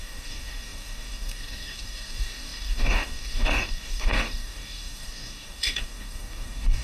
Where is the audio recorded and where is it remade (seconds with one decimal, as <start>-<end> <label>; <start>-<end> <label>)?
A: 0.0-6.8 remade